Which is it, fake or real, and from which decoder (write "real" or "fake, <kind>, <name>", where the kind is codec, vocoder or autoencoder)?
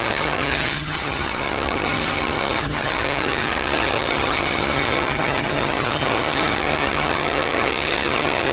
fake, vocoder, HiFi-GAN